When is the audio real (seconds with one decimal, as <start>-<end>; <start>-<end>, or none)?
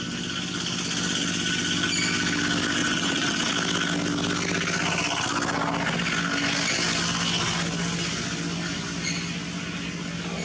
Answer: 0.0-2.8; 3.5-10.4